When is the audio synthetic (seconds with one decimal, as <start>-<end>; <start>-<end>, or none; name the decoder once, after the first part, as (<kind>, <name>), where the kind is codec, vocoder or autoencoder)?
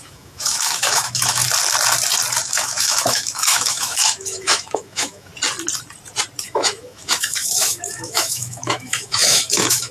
0.0-1.4 (autoencoder, DAC-VAE); 2.4-5.3; 6.4-9.9